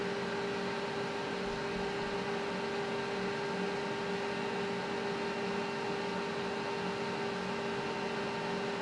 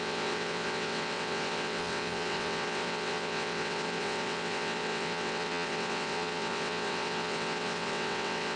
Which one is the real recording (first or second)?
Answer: first